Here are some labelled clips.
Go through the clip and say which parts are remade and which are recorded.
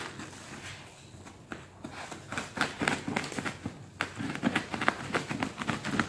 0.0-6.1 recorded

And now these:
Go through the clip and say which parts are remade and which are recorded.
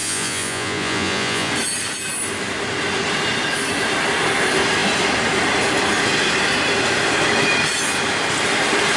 0.0-1.5 remade; 1.5-9.0 recorded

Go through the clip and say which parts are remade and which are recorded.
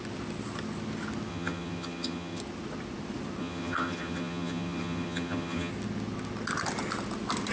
0.0-1.3 recorded; 1.3-2.4 remade; 2.4-3.4 recorded; 3.4-5.7 remade; 5.7-7.5 recorded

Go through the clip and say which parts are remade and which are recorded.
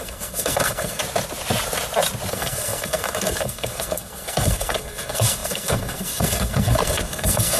0.0-1.0 remade; 1.0-2.3 recorded; 2.3-7.6 remade